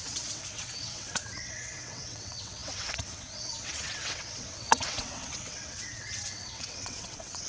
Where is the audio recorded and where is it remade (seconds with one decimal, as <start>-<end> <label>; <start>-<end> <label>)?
0.0-7.5 remade